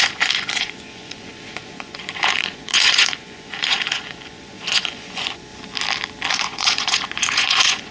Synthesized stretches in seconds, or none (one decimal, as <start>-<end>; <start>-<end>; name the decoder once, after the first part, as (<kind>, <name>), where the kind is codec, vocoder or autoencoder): 0.0-5.5 (vocoder, Vocos); 6.3-7.9